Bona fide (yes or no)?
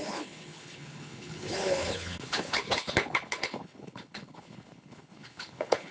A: no